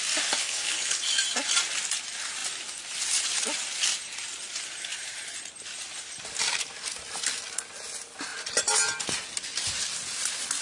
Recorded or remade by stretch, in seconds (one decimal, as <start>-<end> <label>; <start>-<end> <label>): 0.0-0.4 recorded; 0.4-1.0 remade; 1.0-10.6 recorded